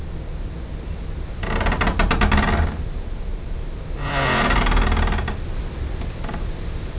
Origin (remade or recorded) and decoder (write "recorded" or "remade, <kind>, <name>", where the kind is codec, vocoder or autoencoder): recorded